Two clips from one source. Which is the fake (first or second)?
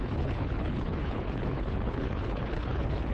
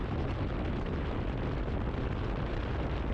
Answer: first